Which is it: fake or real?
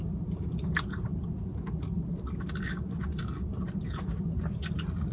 real